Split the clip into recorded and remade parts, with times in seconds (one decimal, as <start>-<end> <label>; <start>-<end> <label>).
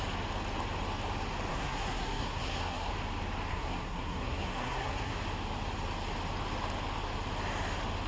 0.0-1.5 recorded; 1.5-2.9 remade; 2.9-3.5 recorded; 3.5-5.1 remade; 5.1-8.1 recorded